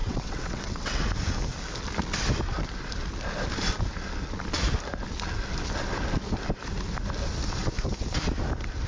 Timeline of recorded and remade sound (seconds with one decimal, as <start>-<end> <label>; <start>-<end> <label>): 0.0-1.0 remade; 1.0-8.9 recorded